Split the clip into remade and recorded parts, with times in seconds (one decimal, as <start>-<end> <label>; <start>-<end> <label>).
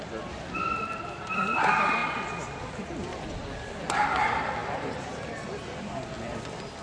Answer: 0.0-2.0 remade; 2.0-2.7 recorded; 2.7-4.6 remade; 4.6-6.1 recorded; 6.1-6.8 remade